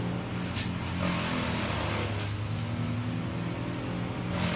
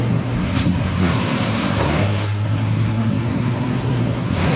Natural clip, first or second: first